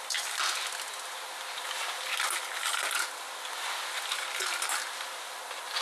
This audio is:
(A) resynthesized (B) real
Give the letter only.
B